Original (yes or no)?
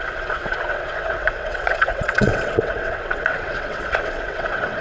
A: no